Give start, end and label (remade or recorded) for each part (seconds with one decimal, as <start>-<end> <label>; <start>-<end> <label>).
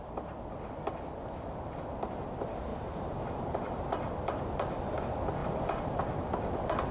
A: 0.0-2.7 recorded; 2.7-4.4 remade; 4.4-5.4 recorded; 5.4-6.0 remade; 6.0-6.9 recorded